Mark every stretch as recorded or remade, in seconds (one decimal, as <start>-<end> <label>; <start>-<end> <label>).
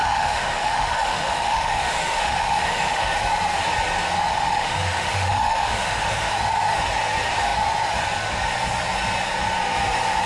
0.0-3.0 remade; 3.0-4.3 recorded; 4.3-6.3 remade; 6.3-10.3 recorded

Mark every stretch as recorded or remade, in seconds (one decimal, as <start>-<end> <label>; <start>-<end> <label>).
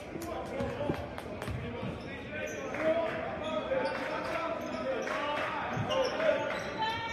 0.0-6.1 recorded; 6.1-7.1 remade